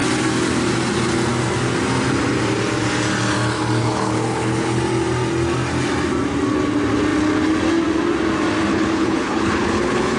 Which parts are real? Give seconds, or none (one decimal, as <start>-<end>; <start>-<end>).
0.0-3.8; 4.8-8.7